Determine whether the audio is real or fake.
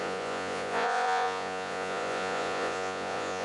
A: fake